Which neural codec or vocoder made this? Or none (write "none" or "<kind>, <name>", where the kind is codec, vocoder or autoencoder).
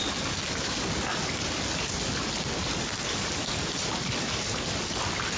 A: none